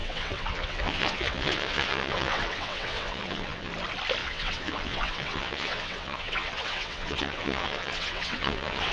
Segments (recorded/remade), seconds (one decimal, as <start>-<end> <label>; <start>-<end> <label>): 0.0-3.7 remade; 3.7-4.2 recorded; 4.2-8.9 remade